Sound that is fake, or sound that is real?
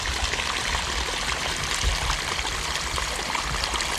real